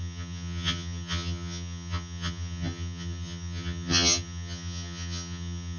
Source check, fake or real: fake